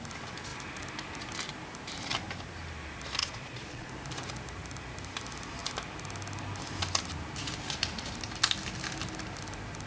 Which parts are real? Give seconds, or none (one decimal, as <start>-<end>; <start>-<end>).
0.0-3.2; 3.9-9.9